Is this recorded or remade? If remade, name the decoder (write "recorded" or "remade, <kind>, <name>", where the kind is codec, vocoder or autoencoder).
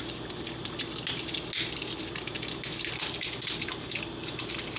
recorded